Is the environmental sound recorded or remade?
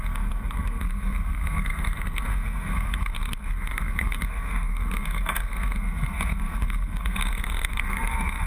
remade